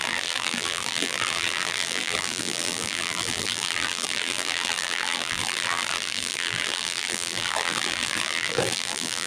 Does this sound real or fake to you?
fake